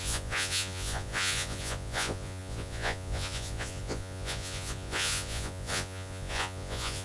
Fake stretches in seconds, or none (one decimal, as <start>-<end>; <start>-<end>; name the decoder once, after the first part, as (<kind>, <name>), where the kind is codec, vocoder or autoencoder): 0.0-7.0 (vocoder, Vocos)